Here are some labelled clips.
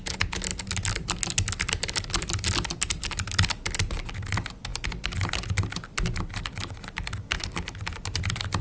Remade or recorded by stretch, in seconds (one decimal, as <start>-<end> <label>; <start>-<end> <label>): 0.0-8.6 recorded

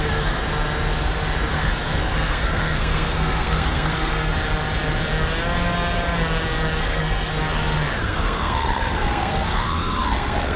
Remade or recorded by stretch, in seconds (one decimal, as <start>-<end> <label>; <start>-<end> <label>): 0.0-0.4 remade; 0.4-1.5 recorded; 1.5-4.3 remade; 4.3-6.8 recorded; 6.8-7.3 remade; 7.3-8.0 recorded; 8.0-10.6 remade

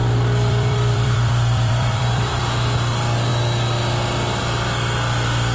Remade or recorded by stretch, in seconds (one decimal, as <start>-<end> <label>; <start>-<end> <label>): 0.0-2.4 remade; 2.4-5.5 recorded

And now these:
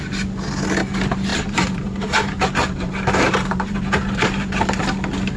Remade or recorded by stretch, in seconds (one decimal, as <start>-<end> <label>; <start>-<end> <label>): 0.0-1.3 recorded; 1.3-4.5 remade; 4.5-5.4 recorded